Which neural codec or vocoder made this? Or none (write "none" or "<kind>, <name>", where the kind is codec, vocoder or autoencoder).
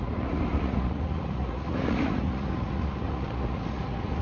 vocoder, Vocos